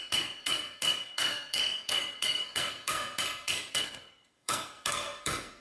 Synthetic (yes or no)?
yes